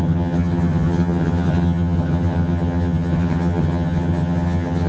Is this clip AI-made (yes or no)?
yes